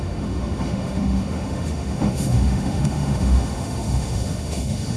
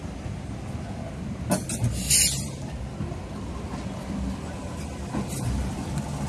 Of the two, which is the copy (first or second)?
first